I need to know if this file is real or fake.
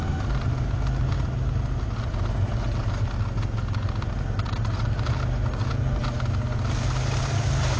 real